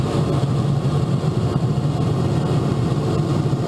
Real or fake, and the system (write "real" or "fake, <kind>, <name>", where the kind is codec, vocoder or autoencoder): real